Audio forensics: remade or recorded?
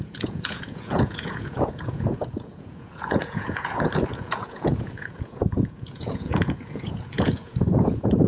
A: remade